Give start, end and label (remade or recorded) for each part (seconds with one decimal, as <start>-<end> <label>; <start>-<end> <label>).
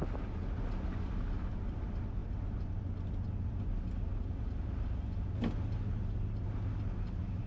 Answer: 0.0-7.5 recorded